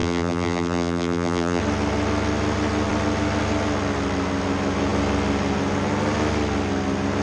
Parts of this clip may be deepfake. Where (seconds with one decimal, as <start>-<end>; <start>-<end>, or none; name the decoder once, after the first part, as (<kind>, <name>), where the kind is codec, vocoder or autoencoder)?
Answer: 0.0-1.6 (vocoder, BigVGAN v2)